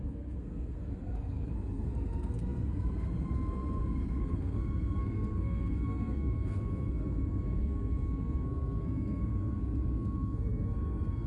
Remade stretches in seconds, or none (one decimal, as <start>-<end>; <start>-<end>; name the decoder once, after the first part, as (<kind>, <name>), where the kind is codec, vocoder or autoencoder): 0.0-11.3 (codec, SNAC)